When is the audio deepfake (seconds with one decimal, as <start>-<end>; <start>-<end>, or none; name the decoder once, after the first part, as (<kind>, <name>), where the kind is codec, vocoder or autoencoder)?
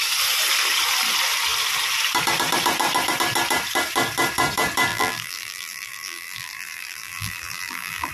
4.9-8.1 (vocoder, BigVGAN v2)